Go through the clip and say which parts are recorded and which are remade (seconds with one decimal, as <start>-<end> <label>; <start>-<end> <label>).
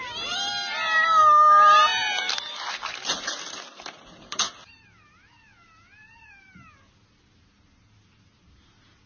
0.0-9.1 recorded